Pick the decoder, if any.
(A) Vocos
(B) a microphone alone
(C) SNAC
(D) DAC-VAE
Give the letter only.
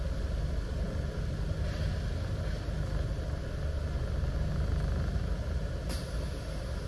B